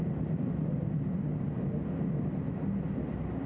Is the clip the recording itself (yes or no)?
yes